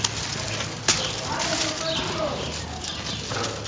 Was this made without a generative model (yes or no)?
yes